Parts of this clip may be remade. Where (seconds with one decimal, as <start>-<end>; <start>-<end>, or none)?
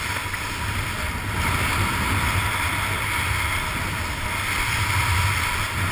none